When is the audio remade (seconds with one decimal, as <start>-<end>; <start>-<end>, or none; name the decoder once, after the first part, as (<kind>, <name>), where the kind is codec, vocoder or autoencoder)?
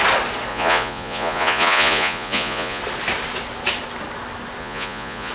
0.5-2.8 (vocoder, Vocos); 4.6-5.3